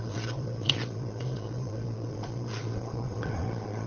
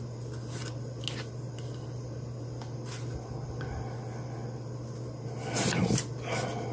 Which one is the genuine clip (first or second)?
second